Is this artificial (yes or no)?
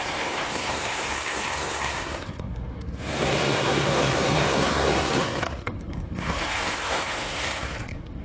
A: yes